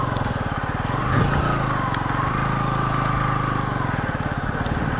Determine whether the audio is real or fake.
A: real